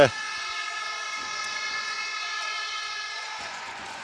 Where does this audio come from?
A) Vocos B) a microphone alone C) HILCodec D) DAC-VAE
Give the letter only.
A